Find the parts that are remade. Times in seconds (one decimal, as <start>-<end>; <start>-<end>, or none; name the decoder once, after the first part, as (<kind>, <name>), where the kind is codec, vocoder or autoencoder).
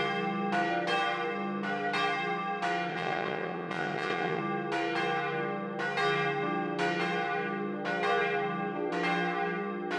2.9-4.4 (vocoder, Vocos)